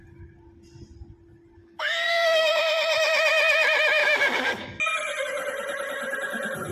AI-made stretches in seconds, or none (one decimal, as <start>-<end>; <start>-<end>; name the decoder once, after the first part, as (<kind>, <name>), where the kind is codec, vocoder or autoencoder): 1.6-2.6 (codec, DAC); 4.0-4.8